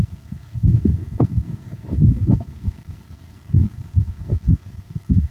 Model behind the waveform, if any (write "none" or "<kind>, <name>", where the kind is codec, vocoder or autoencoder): codec, SNAC